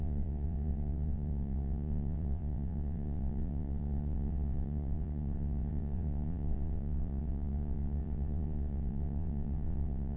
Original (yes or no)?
no